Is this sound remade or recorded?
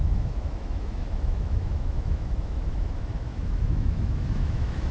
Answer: remade